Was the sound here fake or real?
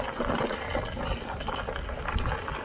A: real